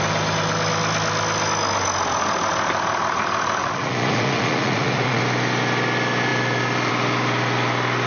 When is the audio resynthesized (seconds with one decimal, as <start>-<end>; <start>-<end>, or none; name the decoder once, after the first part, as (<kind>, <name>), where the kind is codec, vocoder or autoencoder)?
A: 3.6-5.2 (vocoder, Vocos)